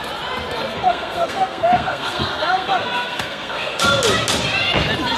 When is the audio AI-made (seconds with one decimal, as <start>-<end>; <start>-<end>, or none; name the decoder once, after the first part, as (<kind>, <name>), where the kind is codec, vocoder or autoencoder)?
0.7-3.8 (codec, SNAC)